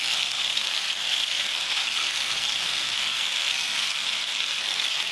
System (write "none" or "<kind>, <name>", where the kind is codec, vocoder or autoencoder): codec, SNAC